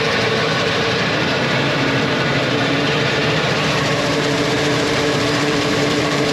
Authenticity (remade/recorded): remade